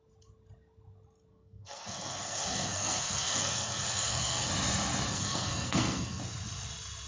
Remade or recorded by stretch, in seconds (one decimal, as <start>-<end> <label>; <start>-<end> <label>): 0.0-1.3 recorded; 1.3-4.5 remade; 4.5-5.1 recorded; 5.1-6.2 remade; 6.2-7.1 recorded